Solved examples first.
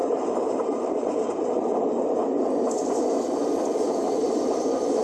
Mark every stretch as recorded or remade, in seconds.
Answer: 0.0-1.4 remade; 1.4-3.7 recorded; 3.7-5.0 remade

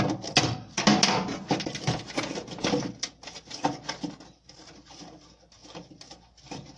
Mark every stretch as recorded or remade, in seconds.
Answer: 0.0-6.8 recorded